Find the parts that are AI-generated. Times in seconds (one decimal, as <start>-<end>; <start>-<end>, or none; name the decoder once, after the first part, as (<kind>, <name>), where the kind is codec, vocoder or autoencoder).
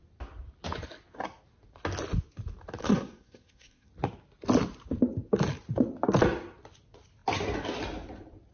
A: 2.8-3.9 (codec, SNAC)